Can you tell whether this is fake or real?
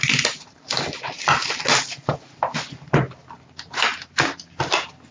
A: real